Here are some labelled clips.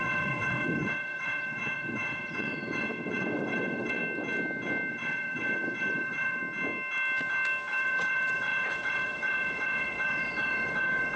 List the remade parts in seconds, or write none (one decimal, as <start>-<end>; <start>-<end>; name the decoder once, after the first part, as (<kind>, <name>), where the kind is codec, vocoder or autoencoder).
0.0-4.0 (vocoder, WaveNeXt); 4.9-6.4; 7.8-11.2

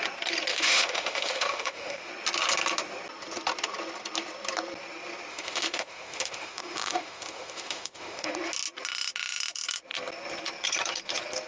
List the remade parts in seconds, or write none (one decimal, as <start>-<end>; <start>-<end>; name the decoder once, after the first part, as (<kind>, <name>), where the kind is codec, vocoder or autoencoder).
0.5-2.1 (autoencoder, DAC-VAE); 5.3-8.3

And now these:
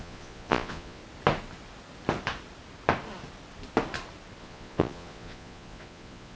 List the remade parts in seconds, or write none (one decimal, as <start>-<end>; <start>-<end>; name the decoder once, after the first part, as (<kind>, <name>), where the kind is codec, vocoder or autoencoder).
0.0-1.0 (vocoder, Vocos); 4.4-6.4

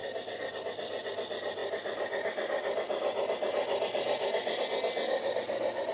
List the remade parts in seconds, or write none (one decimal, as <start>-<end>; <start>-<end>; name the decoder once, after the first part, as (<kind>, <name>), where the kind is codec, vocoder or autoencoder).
none